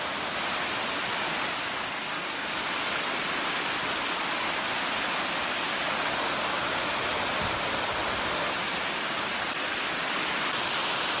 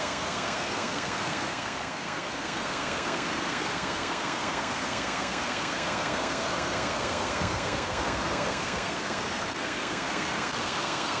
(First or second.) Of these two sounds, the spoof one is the second